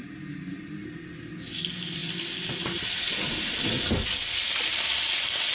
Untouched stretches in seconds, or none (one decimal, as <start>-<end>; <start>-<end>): 0.0-5.5

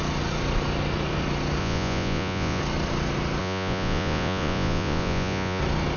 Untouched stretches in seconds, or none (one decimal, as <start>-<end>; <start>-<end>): 0.0-1.6; 2.6-3.4; 5.6-6.0

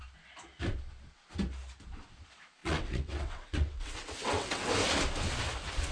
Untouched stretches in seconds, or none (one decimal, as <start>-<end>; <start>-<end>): 0.0-2.6; 4.7-5.9

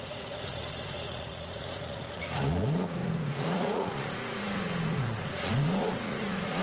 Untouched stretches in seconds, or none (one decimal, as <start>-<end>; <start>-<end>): none

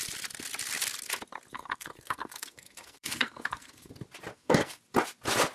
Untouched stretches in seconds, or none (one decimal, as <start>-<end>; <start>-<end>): 0.0-1.5; 3.9-4.3; 4.8-5.5